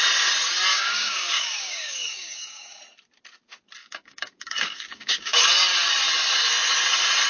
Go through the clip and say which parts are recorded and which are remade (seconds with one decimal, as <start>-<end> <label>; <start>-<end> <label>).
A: 0.0-0.7 recorded; 0.7-2.8 remade; 2.8-3.8 recorded; 3.8-5.4 remade; 5.4-7.3 recorded